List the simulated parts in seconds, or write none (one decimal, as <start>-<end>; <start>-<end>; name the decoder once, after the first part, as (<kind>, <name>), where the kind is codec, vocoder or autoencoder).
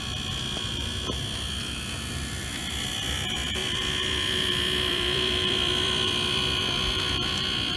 3.6-6.6 (vocoder, BigVGAN v2)